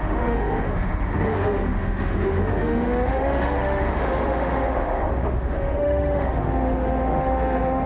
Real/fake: fake